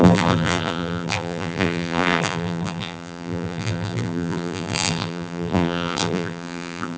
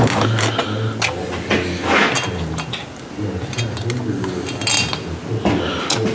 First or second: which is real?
second